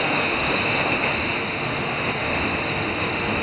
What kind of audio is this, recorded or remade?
remade